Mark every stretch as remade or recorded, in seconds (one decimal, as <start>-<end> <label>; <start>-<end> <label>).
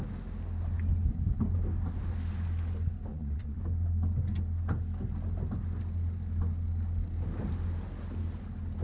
0.0-3.1 recorded; 3.1-3.6 remade; 3.6-8.8 recorded